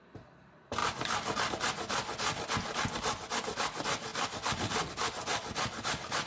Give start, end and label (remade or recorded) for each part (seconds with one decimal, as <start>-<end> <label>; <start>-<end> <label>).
0.0-6.3 recorded